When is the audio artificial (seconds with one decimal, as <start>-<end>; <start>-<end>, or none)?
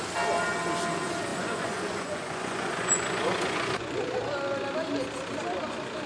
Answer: 1.3-4.0